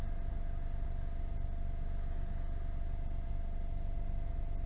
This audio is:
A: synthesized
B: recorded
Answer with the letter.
B